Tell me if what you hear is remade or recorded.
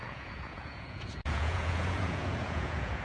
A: remade